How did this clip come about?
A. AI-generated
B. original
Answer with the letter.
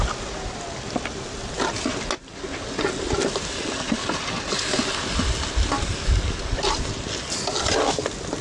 B